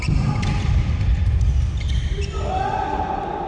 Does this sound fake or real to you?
real